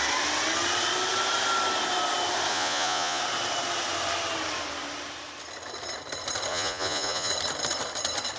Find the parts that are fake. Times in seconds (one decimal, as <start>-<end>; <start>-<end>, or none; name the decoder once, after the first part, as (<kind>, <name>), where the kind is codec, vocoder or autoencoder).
2.5-3.2 (vocoder, Vocos); 6.5-7.3